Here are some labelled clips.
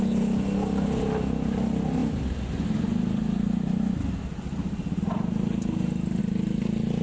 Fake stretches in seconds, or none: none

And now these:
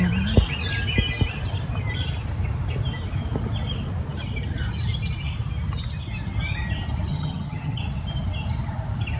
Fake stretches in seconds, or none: 7.1-7.8